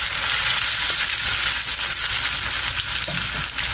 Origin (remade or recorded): recorded